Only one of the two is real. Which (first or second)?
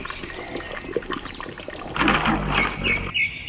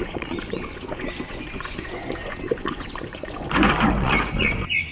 first